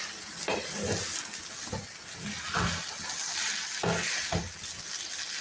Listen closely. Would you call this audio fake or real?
real